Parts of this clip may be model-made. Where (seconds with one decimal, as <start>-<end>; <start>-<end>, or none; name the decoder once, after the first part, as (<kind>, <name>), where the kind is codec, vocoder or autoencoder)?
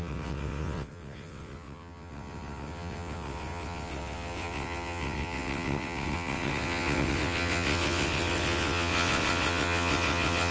0.0-10.5 (vocoder, WaveNeXt)